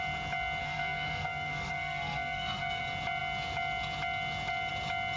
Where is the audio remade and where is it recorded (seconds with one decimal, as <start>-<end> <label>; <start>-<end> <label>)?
0.0-0.6 recorded; 0.6-2.8 remade; 2.8-5.2 recorded